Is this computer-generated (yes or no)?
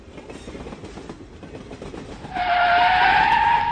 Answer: no